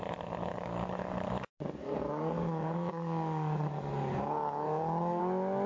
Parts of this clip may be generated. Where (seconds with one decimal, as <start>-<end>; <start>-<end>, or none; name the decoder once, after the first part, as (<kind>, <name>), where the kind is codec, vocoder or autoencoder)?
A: 0.5-1.3 (codec, DAC); 1.8-5.2